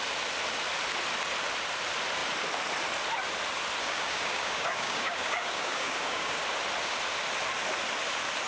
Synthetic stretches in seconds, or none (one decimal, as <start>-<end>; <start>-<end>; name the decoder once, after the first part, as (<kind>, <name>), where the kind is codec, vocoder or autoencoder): 3.8-6.4 (codec, DAC)